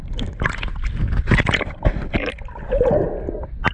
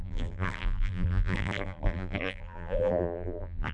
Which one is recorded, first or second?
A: first